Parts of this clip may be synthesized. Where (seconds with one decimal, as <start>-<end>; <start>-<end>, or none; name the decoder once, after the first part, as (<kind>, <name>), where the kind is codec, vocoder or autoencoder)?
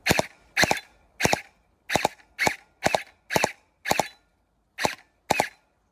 none